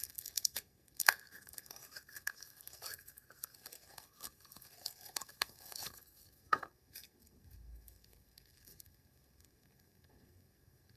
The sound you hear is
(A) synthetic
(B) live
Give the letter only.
A